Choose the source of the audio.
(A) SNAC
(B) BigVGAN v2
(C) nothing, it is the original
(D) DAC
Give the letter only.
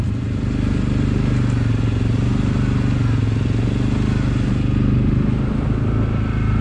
C